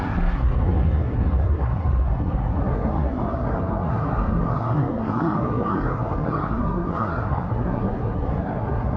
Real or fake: fake